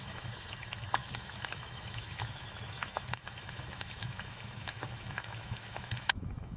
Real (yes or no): no